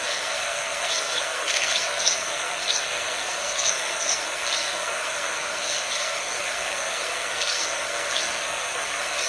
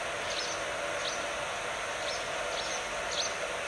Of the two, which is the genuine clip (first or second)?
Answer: second